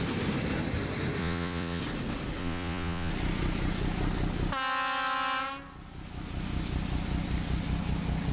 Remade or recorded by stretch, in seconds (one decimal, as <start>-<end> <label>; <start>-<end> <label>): 0.0-1.2 recorded; 1.2-1.8 remade; 1.8-2.4 recorded; 2.4-3.1 remade; 3.1-8.3 recorded